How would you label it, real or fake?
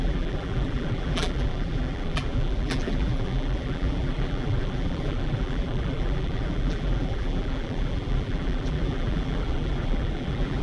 fake